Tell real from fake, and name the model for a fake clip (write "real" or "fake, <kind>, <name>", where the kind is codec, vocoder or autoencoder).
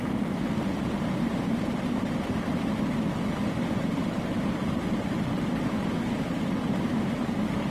real